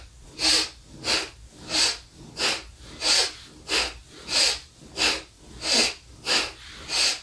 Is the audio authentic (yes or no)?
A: yes